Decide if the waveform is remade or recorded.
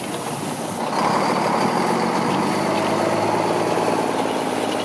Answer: recorded